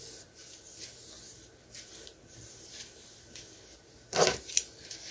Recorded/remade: recorded